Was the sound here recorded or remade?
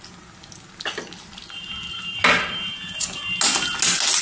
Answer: recorded